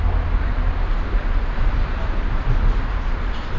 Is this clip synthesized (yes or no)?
no